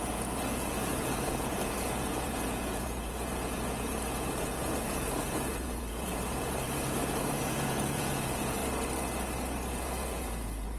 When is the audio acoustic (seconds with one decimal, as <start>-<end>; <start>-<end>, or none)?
8.6-9.7